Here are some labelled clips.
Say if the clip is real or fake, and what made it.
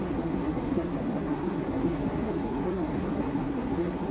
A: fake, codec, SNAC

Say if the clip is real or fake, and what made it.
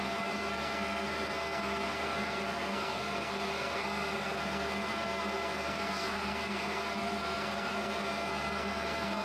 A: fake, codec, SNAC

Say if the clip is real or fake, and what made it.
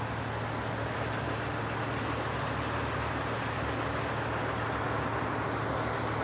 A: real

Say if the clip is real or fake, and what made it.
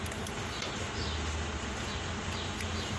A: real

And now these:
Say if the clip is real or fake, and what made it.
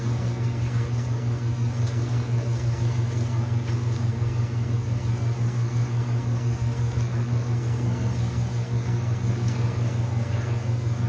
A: fake, codec, SNAC